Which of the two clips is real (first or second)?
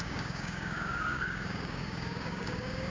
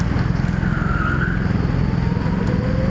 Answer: second